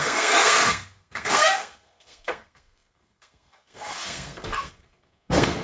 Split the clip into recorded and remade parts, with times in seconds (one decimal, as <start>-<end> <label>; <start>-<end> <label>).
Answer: 0.0-5.6 remade